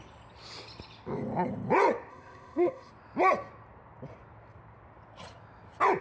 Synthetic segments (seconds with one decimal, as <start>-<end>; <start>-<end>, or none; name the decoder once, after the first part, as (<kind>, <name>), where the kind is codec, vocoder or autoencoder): 2.1-2.9 (codec, ZipCodec)